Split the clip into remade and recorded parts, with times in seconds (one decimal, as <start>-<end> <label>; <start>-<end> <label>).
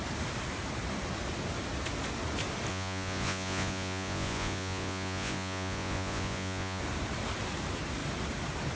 0.0-2.7 recorded; 2.7-6.8 remade; 6.8-8.8 recorded